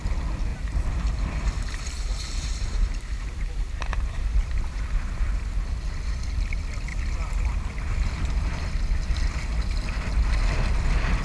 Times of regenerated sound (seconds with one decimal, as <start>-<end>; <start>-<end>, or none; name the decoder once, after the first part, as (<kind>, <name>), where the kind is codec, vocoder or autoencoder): 0.5-5.2 (vocoder, BigVGAN v2); 6.9-8.7